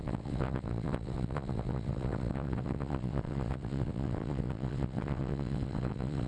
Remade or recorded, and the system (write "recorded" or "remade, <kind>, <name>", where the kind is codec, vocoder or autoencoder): remade, vocoder, WaveNeXt